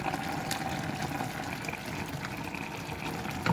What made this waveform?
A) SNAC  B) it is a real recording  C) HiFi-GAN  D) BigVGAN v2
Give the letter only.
B